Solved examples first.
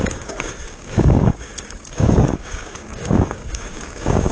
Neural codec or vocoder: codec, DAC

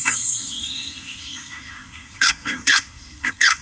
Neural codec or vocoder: codec, SNAC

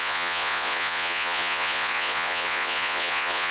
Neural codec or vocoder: vocoder, Vocos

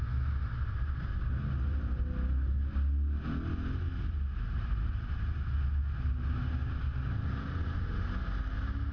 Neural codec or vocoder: none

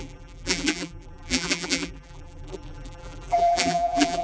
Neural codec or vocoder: vocoder, BigVGAN v2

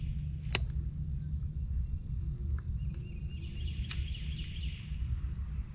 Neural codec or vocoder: none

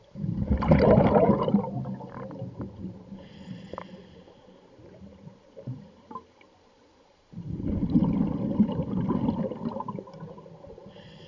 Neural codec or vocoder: none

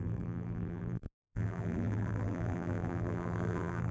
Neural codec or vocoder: vocoder, BigVGAN v2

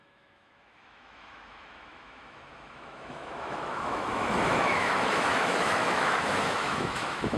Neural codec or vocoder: autoencoder, DAC-VAE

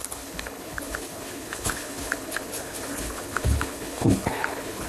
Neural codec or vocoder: codec, HILCodec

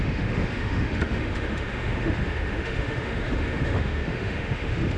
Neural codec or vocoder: autoencoder, DAC-VAE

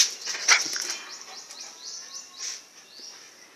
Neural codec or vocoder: none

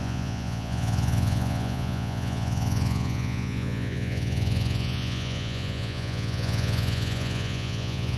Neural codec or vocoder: vocoder, Vocos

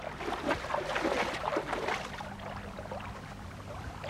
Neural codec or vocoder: none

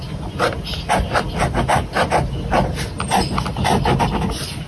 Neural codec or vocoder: none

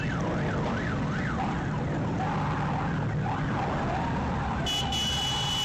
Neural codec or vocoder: none